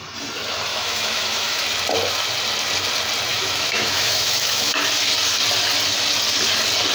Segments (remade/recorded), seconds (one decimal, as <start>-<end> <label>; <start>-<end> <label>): 0.0-0.7 recorded; 0.7-1.6 remade; 1.6-3.3 recorded; 3.3-4.9 remade; 4.9-6.9 recorded